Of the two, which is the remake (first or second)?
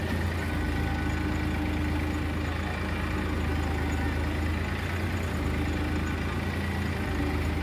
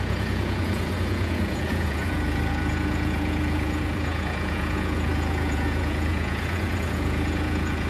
second